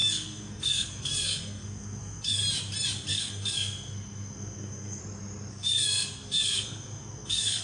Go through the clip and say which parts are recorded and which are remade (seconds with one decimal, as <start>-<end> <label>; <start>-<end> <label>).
0.0-2.4 remade; 2.4-3.1 recorded; 3.1-5.0 remade; 5.0-5.5 recorded; 5.5-7.6 remade